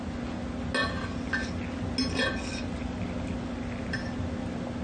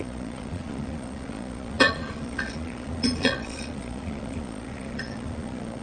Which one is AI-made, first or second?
second